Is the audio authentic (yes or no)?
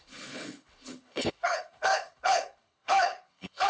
no